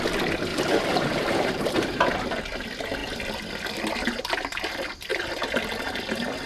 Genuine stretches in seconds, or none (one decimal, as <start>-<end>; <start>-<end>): 0.0-0.5; 2.1-6.5